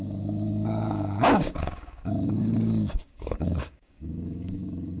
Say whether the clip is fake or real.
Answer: fake